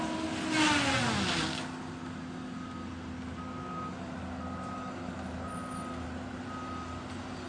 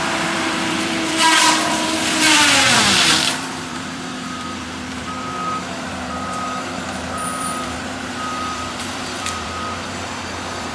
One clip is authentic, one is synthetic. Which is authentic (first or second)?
first